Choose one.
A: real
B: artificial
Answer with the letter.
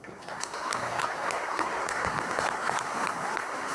B